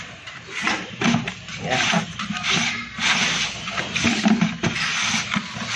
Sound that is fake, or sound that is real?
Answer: real